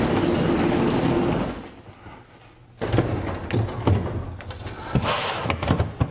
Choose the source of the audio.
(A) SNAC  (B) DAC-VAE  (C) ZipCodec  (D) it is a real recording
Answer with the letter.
D